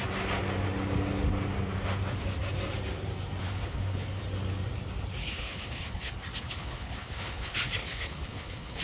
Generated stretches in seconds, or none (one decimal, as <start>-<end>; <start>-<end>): 3.4-4.2; 5.2-6.1; 6.5-8.8